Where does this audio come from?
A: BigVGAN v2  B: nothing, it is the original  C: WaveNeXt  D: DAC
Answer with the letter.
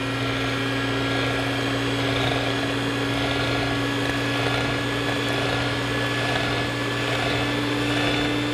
B